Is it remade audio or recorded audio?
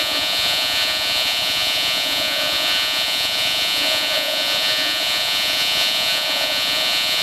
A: remade